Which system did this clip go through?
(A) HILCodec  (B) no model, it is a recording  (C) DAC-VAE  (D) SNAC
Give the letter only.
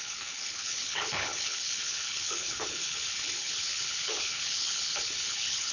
A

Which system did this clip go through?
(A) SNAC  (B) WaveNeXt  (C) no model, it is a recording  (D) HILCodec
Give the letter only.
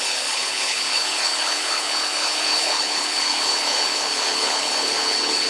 D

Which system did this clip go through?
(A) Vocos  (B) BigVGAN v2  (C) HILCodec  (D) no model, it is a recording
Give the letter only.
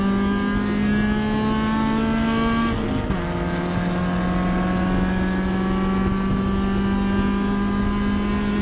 D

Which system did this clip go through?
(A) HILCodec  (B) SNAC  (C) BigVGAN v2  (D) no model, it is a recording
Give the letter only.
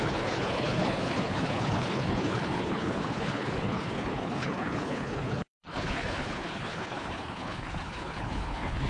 A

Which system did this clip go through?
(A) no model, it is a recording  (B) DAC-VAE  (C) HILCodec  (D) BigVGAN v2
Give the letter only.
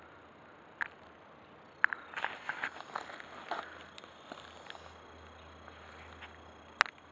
A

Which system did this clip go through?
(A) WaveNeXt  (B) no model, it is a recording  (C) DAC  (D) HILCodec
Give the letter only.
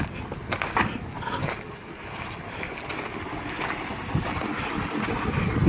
B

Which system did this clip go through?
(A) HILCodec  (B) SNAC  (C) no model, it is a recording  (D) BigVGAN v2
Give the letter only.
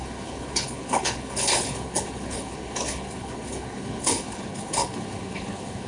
A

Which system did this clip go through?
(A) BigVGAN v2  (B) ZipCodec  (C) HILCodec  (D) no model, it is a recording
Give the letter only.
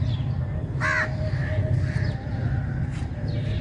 D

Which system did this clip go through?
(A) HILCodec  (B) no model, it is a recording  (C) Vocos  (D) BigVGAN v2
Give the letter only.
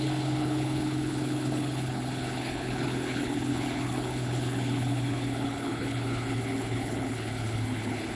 A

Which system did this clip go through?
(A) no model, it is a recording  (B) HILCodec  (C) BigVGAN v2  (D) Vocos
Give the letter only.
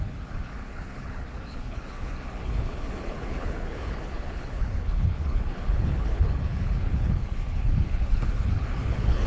B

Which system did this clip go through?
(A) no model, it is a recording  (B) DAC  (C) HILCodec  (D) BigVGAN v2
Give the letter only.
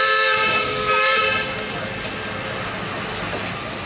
A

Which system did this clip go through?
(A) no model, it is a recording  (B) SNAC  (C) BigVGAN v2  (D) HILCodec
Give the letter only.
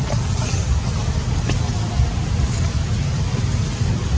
A